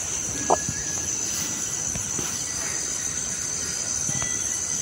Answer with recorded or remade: recorded